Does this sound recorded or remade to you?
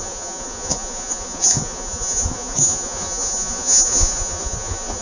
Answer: remade